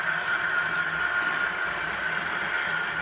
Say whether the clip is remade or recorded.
recorded